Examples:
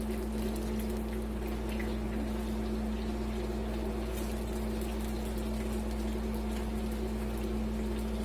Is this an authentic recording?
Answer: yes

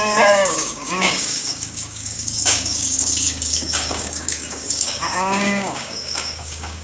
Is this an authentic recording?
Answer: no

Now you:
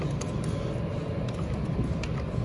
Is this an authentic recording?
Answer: yes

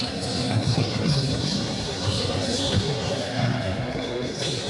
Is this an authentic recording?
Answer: no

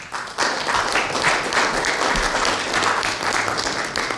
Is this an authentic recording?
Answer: yes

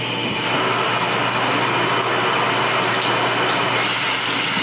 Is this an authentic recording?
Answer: yes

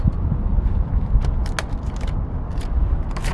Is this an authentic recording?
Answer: yes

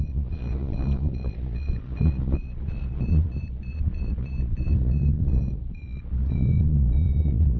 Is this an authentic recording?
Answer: no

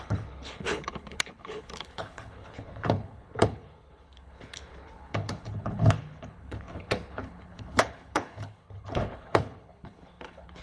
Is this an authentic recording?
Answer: no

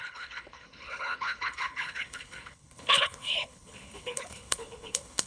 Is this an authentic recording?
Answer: no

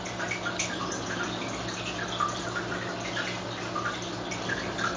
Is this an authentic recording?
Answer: yes